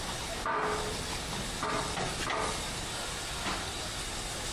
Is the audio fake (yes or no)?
no